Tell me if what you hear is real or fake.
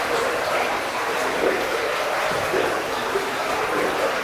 real